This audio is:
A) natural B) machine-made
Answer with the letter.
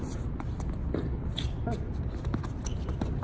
A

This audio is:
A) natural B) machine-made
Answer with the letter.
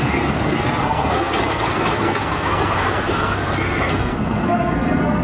B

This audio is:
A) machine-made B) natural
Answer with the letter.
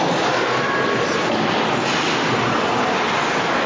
B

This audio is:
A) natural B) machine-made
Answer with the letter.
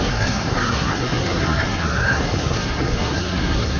B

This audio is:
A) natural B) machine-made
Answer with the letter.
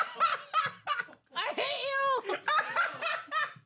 A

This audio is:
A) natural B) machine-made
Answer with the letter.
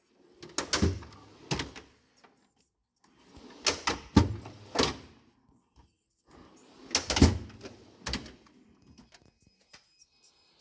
A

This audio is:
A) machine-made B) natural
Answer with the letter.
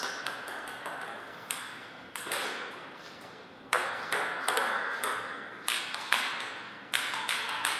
A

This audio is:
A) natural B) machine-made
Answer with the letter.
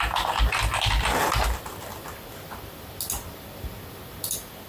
A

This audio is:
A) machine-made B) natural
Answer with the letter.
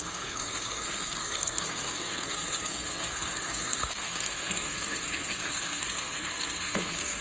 A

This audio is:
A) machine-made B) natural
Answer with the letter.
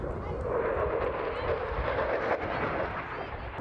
B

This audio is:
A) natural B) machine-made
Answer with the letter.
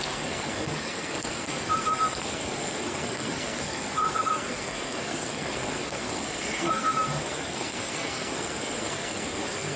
B